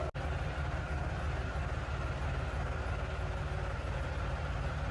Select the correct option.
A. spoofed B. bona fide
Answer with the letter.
B